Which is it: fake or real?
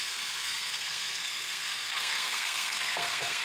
fake